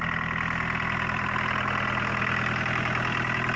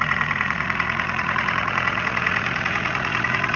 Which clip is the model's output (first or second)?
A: second